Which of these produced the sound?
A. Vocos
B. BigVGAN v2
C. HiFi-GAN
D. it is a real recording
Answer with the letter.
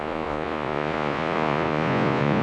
A